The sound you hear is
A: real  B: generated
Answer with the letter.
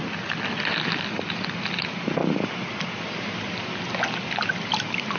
A